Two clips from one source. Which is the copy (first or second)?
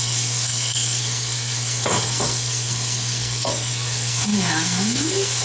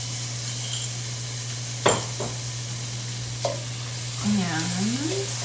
first